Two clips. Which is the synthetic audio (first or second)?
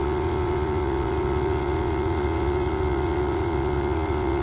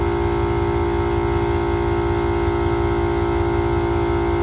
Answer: first